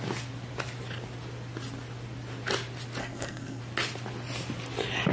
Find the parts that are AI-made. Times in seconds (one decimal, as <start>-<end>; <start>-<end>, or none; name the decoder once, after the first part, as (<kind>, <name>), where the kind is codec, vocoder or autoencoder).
3.0-3.6 (codec, SNAC)

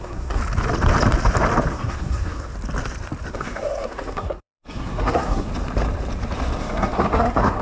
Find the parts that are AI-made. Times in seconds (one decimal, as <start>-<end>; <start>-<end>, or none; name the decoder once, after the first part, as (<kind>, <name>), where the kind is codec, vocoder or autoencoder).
0.0-0.4 (codec, SNAC); 1.7-2.5; 3.3-5.5; 6.6-7.6

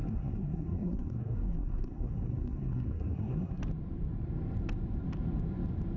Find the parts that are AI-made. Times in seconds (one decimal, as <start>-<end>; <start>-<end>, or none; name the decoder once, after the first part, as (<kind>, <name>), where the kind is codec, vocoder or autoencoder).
0.0-3.6 (codec, SNAC)

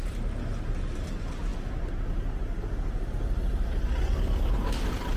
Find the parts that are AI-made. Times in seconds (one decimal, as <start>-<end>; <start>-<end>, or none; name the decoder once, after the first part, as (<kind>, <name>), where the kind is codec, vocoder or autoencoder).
none

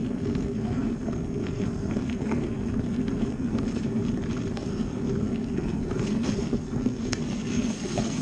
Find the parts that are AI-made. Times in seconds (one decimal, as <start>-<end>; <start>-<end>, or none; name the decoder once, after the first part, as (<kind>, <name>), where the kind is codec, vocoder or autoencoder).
0.0-4.0 (codec, SNAC); 4.5-8.2

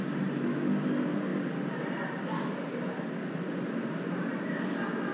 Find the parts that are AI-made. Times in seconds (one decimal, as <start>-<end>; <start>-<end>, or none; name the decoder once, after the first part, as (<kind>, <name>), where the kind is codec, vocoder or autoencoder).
none

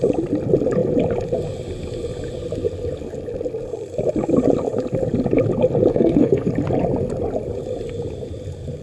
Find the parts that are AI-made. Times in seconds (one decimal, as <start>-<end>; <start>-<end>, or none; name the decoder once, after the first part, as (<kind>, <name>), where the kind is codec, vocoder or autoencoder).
5.9-6.5 (codec, SNAC)